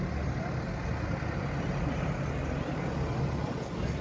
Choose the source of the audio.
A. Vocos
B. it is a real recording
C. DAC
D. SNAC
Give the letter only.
B